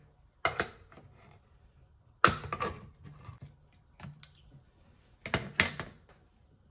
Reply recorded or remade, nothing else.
recorded